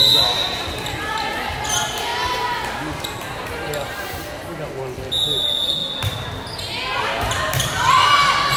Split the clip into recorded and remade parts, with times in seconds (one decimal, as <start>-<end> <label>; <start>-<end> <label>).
0.0-8.6 recorded